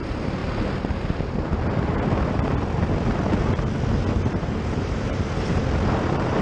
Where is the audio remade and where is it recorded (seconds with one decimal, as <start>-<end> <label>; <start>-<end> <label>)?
0.0-0.4 remade; 0.4-4.1 recorded; 4.1-6.4 remade